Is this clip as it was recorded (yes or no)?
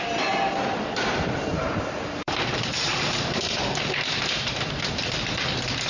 no